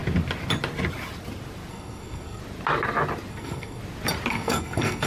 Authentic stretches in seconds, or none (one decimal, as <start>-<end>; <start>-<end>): 0.0-1.7; 2.4-3.3; 3.8-4.3